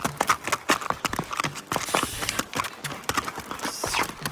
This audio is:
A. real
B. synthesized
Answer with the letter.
A